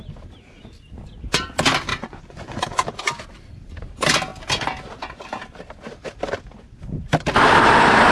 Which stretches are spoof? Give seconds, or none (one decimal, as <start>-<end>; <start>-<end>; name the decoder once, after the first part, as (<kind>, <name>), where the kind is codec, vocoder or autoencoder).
1.9-2.6 (vocoder, Vocos)